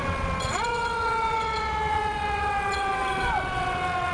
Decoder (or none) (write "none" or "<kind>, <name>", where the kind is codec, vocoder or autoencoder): vocoder, WaveNeXt